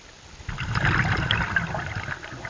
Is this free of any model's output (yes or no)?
yes